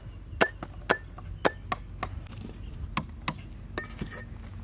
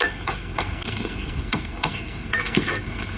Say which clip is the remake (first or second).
second